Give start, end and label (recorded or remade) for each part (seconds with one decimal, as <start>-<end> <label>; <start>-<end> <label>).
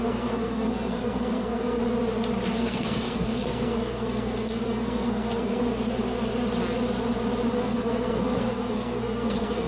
0.0-1.8 remade; 1.8-2.5 recorded; 2.5-5.6 remade; 5.6-7.5 recorded; 7.5-9.7 remade